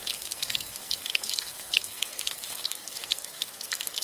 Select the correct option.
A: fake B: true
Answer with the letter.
A